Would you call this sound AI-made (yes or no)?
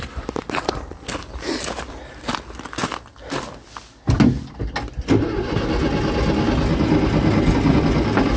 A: no